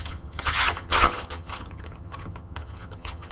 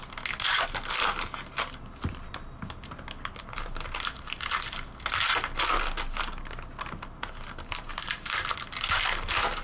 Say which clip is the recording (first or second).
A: second